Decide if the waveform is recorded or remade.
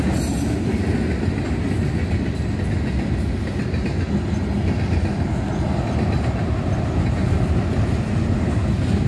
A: recorded